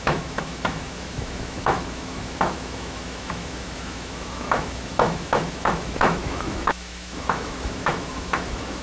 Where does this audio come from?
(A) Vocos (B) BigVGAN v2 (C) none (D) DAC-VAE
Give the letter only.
D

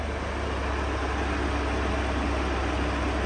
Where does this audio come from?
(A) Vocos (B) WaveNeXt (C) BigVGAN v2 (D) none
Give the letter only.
D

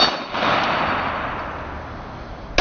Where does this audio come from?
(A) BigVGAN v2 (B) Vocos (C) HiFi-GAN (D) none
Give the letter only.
D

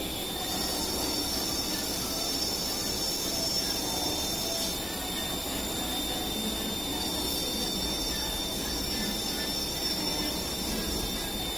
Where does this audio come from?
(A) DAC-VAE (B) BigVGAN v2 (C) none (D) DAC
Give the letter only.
C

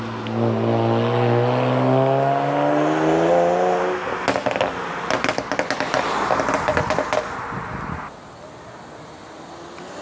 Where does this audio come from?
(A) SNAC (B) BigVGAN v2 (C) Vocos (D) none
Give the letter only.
D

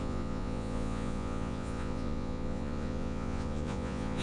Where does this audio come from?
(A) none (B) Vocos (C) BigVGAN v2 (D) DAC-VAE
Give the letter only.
B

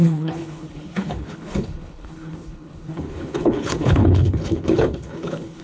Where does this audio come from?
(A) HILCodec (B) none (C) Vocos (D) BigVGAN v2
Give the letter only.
A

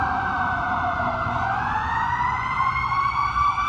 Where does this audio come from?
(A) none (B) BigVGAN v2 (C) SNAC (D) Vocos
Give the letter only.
D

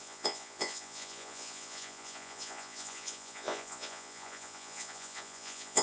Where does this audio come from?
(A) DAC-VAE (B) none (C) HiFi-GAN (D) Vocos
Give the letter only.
D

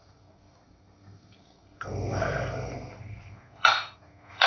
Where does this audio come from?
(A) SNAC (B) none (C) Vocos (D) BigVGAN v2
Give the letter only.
A